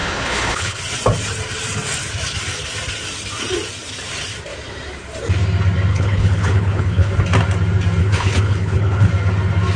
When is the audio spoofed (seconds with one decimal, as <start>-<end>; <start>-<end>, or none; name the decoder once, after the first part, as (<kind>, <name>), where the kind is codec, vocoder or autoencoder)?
0.0-0.8 (codec, HILCodec); 5.9-7.1; 8.0-9.1